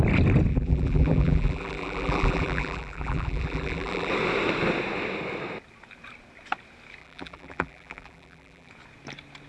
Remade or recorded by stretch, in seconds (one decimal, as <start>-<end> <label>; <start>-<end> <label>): 0.0-0.5 recorded; 0.5-4.1 remade; 4.1-7.0 recorded; 7.0-8.7 remade; 8.7-9.5 recorded